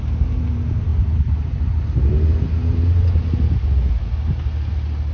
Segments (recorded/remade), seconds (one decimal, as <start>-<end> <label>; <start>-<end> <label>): 0.0-5.1 recorded